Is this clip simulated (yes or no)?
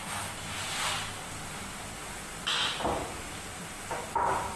no